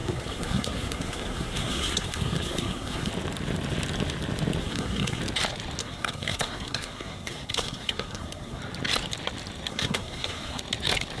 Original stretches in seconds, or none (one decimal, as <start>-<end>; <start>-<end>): 3.1-4.6; 5.2-5.8; 8.6-9.7; 10.6-11.2

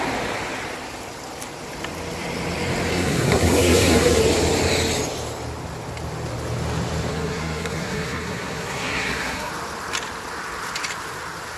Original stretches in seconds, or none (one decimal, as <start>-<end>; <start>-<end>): 0.0-2.9; 4.2-7.1; 9.5-11.6

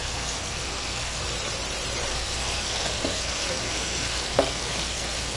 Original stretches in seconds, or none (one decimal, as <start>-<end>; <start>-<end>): 1.2-2.1

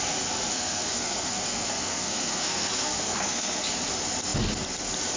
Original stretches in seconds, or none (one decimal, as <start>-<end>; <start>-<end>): 0.0-0.5; 3.6-5.2

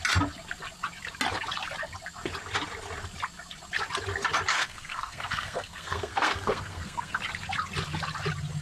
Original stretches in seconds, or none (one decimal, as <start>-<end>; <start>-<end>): 0.0-4.5; 7.2-8.6

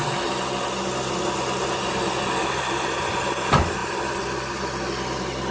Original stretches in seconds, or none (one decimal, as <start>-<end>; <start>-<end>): 0.0-5.5

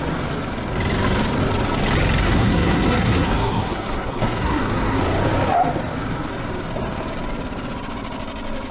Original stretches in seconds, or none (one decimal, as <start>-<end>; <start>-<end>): 0.0-2.2; 5.0-8.7